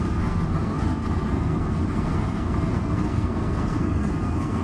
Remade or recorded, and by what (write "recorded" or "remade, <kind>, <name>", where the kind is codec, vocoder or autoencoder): remade, codec, SNAC